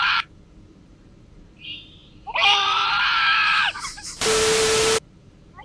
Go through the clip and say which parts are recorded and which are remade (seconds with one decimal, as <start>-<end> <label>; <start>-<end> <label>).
0.0-5.6 remade